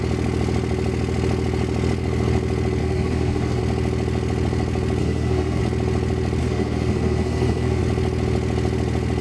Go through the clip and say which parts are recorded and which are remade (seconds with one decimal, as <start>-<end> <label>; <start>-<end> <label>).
0.0-2.8 recorded; 2.8-3.6 remade; 3.6-5.0 recorded; 5.0-5.6 remade; 5.6-6.4 recorded; 6.4-7.8 remade; 7.8-9.2 recorded